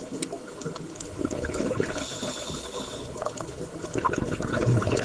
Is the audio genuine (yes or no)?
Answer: no